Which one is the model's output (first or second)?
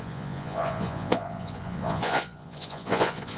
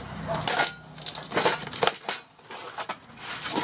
first